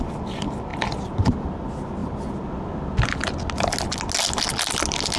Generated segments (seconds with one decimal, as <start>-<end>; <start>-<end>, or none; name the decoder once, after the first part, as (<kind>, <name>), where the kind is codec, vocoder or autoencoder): none